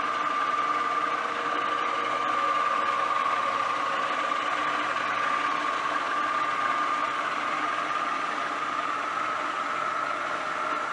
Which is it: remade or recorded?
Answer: recorded